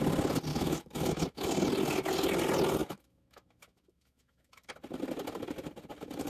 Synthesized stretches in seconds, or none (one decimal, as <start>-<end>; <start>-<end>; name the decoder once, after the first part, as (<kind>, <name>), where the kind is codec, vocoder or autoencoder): 0.5-1.5 (autoencoder, DAC-VAE); 2.8-4.7

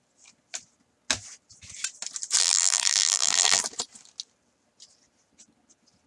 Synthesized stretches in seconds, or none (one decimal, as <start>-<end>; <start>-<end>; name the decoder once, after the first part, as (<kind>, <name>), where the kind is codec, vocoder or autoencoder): 2.4-3.6 (vocoder, BigVGAN v2)

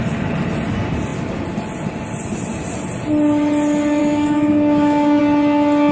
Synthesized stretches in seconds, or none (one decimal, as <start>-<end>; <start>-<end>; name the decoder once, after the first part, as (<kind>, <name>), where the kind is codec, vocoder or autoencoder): 4.0-5.2 (codec, DAC)

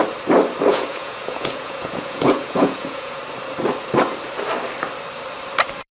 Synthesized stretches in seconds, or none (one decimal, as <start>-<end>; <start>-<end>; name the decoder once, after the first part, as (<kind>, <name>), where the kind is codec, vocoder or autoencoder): 0.7-3.2 (vocoder, Vocos)

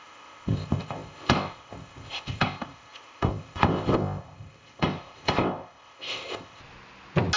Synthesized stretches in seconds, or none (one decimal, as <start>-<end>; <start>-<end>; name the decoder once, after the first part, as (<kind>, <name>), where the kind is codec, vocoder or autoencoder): 0.0-6.6 (codec, ZipCodec)

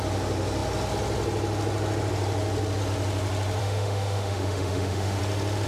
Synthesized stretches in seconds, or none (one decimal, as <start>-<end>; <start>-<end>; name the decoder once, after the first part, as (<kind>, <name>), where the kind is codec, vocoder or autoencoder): 3.6-5.2 (autoencoder, DAC-VAE)

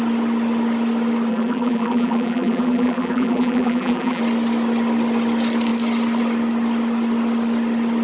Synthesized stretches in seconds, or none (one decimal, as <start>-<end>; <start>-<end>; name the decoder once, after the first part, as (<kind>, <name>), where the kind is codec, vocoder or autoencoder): 1.3-4.2 (vocoder, BigVGAN v2)

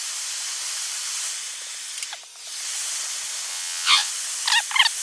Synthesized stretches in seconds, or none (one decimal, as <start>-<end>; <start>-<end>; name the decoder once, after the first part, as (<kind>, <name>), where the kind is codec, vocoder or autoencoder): 3.5-4.1 (vocoder, WaveNeXt)